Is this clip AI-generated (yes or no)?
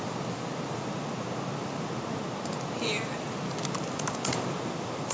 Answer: no